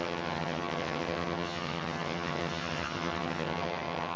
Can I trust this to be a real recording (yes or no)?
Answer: no